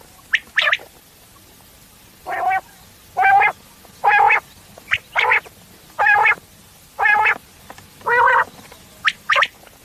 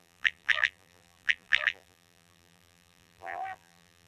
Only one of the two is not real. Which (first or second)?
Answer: second